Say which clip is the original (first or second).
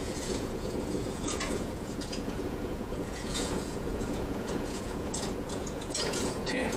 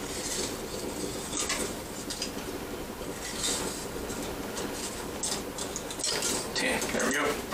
second